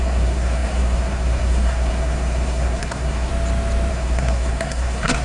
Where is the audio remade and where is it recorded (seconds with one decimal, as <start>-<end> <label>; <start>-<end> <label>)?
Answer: 0.0-3.3 remade; 3.3-3.9 recorded; 3.9-5.2 remade

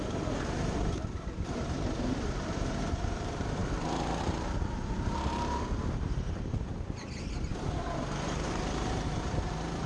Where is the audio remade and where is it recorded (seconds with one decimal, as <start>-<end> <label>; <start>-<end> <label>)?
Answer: 0.0-3.6 remade; 3.6-4.2 recorded; 4.2-9.9 remade

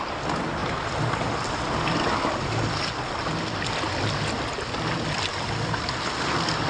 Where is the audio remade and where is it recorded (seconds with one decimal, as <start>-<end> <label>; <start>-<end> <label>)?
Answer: 0.0-6.7 recorded

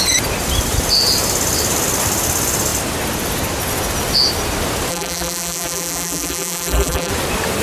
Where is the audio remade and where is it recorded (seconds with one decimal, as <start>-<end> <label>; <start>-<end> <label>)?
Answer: 0.0-4.9 recorded; 4.9-7.1 remade; 7.1-7.6 recorded

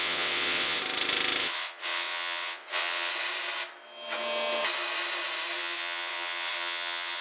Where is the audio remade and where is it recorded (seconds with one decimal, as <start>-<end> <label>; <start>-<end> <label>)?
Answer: 0.0-0.8 remade; 0.8-1.4 recorded; 1.4-3.1 remade; 3.1-5.6 recorded; 5.6-7.2 remade